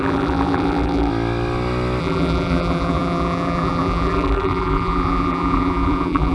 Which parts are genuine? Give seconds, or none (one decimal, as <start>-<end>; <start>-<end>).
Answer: 1.1-2.0